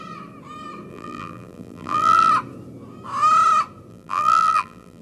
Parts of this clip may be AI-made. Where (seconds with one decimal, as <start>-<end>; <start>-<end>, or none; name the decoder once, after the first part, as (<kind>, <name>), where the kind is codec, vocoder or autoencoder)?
0.9-2.3 (vocoder, BigVGAN v2); 3.9-5.0